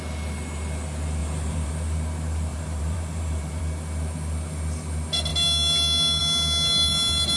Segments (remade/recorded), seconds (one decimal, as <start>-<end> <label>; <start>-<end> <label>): 0.0-1.2 recorded; 1.2-1.7 remade; 1.7-2.5 recorded; 2.5-3.6 remade; 3.6-7.4 recorded